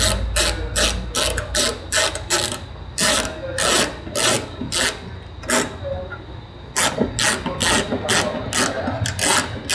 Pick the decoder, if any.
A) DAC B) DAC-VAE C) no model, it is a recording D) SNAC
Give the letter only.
C